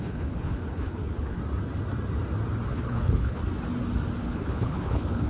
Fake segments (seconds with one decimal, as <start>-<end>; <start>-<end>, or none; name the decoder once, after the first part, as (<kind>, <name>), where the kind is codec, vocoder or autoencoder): 0.0-1.4 (codec, HILCodec); 2.7-3.4; 4.2-5.3